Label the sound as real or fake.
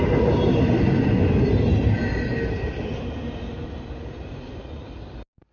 real